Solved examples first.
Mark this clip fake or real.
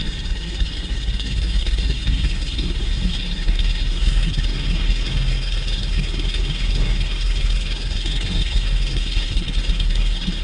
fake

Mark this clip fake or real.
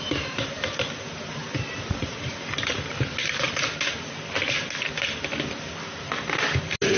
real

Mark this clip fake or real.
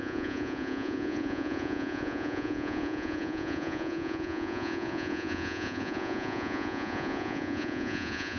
fake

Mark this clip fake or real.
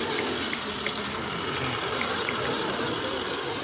real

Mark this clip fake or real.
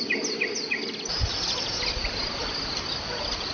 real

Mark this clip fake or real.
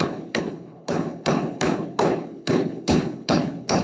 fake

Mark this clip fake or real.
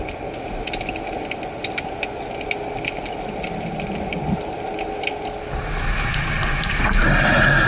real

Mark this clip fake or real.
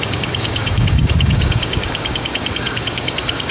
fake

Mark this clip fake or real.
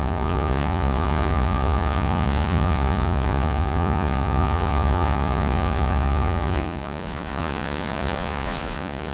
fake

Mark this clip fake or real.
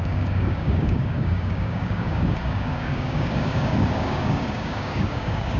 fake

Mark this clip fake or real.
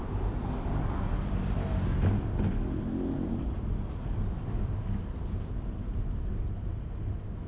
real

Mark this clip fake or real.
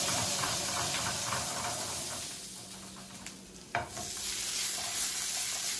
real